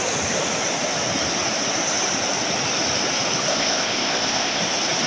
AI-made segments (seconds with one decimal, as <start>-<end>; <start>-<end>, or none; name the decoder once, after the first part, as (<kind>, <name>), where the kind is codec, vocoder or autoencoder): 3.5-4.6 (codec, ZipCodec)